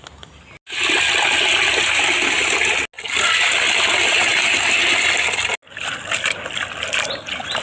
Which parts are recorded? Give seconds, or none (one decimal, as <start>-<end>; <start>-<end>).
0.0-7.6